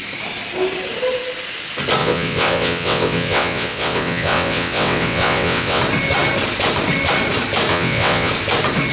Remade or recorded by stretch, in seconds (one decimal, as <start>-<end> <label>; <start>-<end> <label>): 0.0-2.0 recorded; 2.0-5.8 remade; 5.8-7.7 recorded; 7.7-8.3 remade; 8.3-8.9 recorded